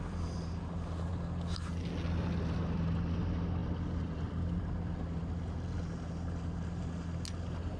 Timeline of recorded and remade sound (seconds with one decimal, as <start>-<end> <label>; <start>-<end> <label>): 0.0-7.8 recorded